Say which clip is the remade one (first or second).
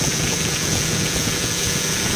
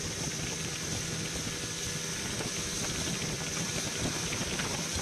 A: first